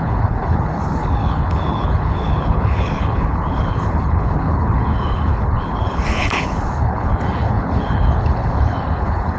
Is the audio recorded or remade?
remade